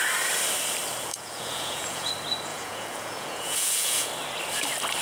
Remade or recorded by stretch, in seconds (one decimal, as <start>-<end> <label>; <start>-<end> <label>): 0.0-1.1 recorded; 1.1-2.1 remade; 2.1-2.5 recorded; 2.5-4.1 remade; 4.1-5.0 recorded